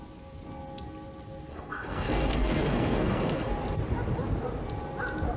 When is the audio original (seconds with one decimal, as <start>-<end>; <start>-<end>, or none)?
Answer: 0.0-1.5; 3.5-5.4